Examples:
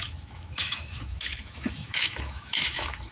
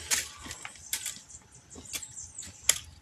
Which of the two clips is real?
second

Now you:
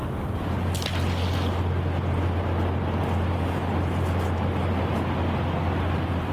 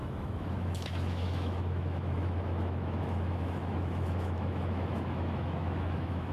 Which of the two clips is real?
first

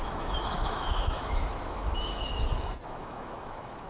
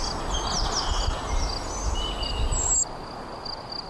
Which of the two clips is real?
second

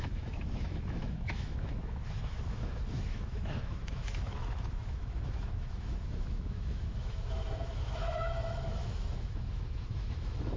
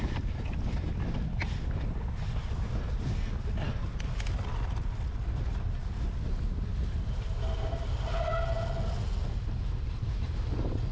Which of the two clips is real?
second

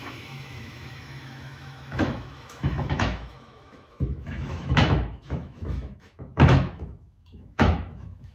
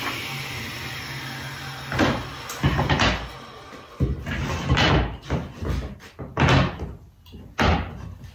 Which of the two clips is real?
second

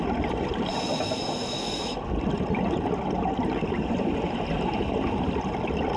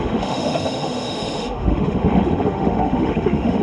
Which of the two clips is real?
first